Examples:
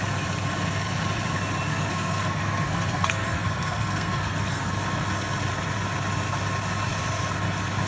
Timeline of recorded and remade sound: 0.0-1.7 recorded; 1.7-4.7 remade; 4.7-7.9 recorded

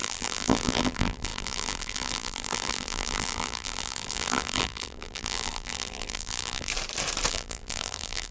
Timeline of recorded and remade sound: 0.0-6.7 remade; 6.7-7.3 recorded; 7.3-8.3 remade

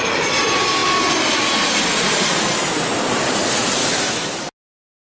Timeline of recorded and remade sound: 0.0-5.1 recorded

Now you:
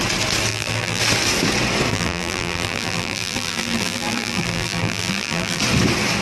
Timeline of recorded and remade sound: 0.0-0.5 recorded; 0.5-1.0 remade; 1.0-1.9 recorded; 1.9-5.6 remade; 5.6-6.2 recorded

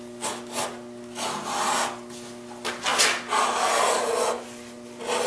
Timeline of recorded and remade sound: 0.0-5.3 recorded

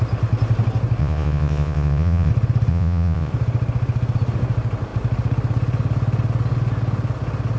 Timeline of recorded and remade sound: 0.0-1.0 recorded; 1.0-2.3 remade; 2.3-2.7 recorded; 2.7-3.3 remade; 3.3-7.6 recorded

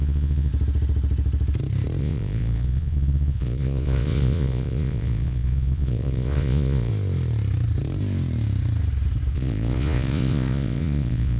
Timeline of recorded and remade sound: 0.0-0.5 remade; 0.5-2.0 recorded; 2.0-6.9 remade; 6.9-9.3 recorded; 9.3-11.4 remade